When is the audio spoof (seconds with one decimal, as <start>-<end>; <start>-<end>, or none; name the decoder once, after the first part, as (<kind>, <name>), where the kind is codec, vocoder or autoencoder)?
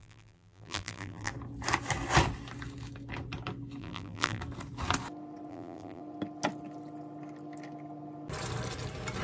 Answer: 0.0-1.3 (vocoder, BigVGAN v2); 3.8-4.4; 5.5-6.0